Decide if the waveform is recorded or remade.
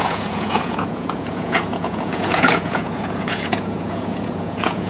remade